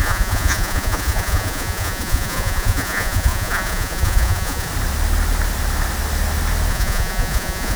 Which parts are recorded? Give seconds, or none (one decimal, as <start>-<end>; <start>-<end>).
4.7-6.7